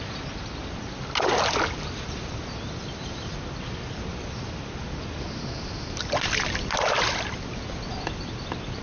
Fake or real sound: real